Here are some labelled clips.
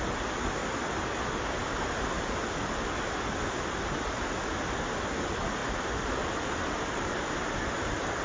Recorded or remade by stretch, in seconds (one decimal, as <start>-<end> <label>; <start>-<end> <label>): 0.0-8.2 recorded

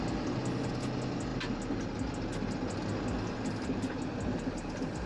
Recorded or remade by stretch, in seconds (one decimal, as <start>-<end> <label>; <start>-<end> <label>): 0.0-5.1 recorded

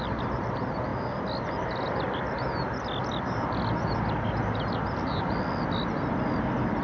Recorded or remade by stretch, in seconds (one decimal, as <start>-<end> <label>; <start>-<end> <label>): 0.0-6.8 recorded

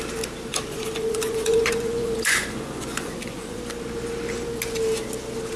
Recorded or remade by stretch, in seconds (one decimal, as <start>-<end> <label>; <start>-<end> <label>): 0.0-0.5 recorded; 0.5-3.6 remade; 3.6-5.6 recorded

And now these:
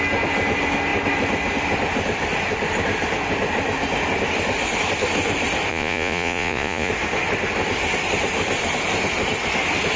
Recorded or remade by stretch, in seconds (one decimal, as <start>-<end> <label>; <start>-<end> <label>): 0.0-5.7 recorded; 5.7-6.9 remade; 6.9-10.0 recorded

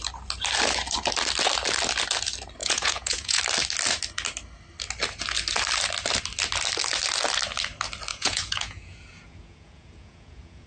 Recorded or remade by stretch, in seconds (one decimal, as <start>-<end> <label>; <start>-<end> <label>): 0.0-2.6 recorded; 2.6-3.4 remade; 3.4-8.1 recorded; 8.1-10.7 remade